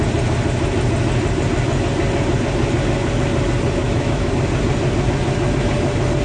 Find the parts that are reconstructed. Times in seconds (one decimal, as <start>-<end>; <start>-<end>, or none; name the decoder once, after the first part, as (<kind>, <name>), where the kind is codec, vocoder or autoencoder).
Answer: 3.8-4.3 (autoencoder, DAC-VAE)